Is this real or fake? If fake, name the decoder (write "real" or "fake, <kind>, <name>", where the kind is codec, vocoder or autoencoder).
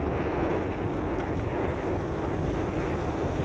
real